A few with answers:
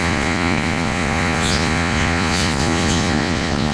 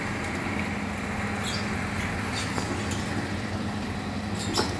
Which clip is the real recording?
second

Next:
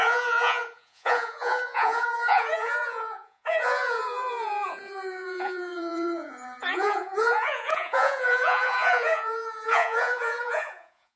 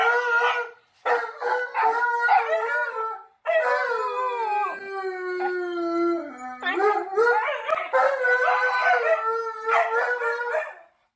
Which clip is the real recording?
second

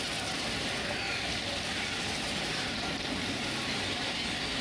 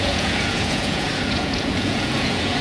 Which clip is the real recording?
first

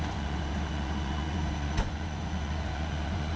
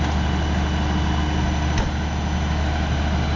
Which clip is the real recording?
second